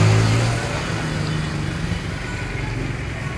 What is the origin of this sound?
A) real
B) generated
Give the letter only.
A